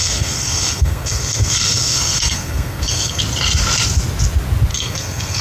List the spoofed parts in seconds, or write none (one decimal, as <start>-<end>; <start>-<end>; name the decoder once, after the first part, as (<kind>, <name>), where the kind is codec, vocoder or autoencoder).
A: 0.0-3.2 (codec, SNAC); 4.7-5.4